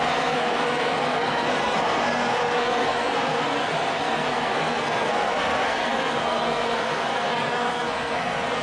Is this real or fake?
fake